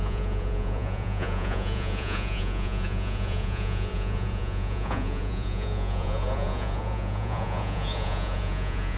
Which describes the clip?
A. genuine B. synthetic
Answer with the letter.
B